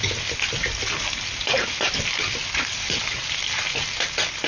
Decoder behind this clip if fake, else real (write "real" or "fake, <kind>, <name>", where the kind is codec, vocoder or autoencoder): real